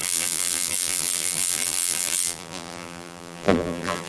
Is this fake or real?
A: fake